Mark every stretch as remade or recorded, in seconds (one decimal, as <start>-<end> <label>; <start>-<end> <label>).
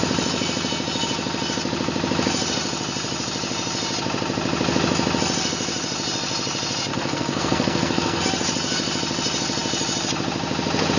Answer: 0.0-6.9 recorded; 6.9-8.2 remade; 8.2-11.0 recorded